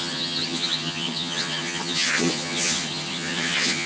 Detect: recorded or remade remade